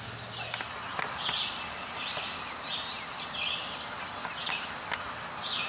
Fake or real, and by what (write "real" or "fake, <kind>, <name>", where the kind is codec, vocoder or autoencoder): real